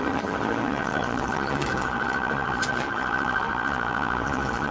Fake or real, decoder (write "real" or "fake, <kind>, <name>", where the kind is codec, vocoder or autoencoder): fake, vocoder, Vocos